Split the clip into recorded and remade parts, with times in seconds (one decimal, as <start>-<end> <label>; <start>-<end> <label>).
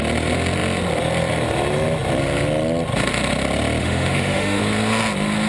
0.0-3.8 recorded; 3.8-4.6 remade; 4.6-5.5 recorded